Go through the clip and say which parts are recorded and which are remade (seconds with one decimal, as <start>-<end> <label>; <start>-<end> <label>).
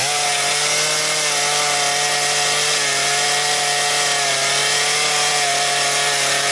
0.0-6.5 recorded